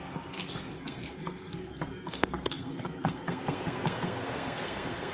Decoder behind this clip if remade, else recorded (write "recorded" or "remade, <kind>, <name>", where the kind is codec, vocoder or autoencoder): remade, codec, SNAC